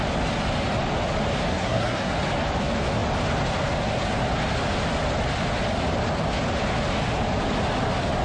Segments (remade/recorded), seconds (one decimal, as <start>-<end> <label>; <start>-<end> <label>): 0.0-1.5 recorded; 1.5-2.1 remade; 2.1-8.2 recorded